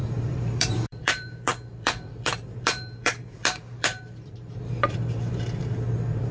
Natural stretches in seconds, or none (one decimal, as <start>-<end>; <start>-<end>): none

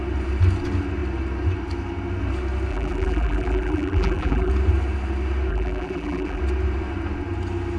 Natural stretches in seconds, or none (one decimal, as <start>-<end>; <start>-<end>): 0.0-2.7; 4.5-5.5; 6.4-7.8

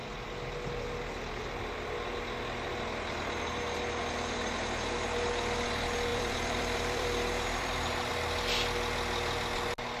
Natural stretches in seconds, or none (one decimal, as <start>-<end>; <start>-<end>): 0.0-6.1; 8.1-10.0

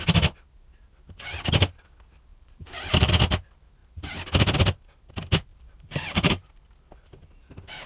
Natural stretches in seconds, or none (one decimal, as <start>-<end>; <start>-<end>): 0.0-2.3; 3.1-5.5; 6.6-7.9

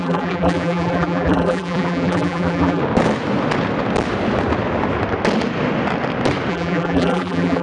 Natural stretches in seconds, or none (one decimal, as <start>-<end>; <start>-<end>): 2.8-6.5